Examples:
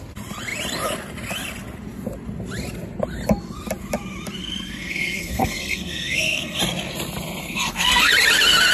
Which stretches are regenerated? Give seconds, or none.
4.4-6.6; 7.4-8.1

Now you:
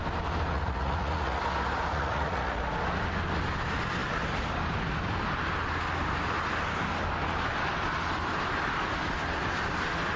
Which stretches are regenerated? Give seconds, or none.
0.5-1.4; 1.9-2.6

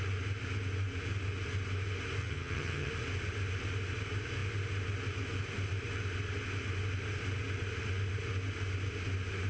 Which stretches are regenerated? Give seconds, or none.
2.2-2.9

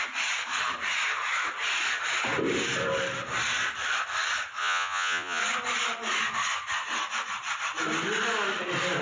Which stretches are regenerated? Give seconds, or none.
4.6-5.4

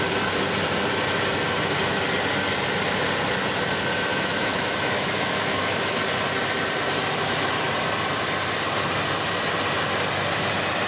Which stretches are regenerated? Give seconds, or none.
4.1-6.0